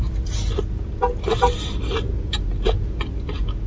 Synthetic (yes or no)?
no